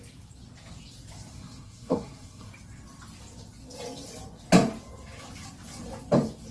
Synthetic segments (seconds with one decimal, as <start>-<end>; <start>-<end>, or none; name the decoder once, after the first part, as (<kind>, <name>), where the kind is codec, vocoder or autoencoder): 1.3-2.5 (codec, SNAC)